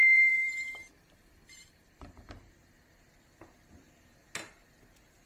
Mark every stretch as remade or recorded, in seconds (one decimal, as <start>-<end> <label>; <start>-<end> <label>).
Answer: 0.0-2.3 remade; 2.3-5.3 recorded